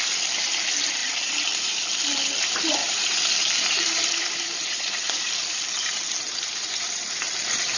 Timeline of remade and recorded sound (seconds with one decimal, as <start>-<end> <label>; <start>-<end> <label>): 0.0-1.0 recorded; 1.0-1.8 remade; 1.8-2.8 recorded; 2.8-7.8 remade